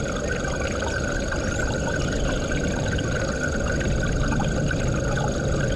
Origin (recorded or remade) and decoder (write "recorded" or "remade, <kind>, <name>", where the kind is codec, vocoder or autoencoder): recorded